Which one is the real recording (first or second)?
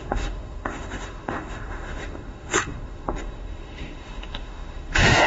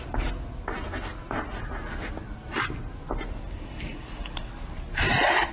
second